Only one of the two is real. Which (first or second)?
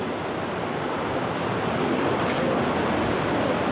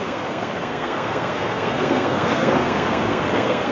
first